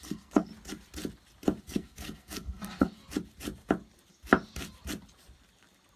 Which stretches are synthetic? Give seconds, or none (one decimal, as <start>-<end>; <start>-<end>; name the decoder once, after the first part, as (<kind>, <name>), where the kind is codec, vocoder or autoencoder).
0.0-0.5 (codec, SNAC); 1.6-3.0